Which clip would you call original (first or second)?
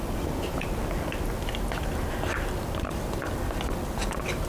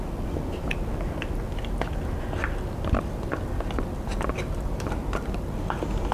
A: second